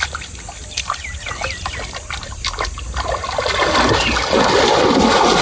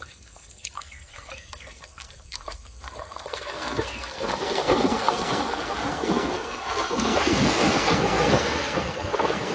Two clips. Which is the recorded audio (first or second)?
first